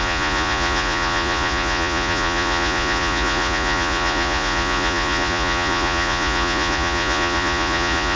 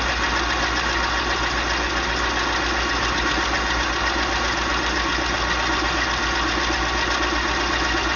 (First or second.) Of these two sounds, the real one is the second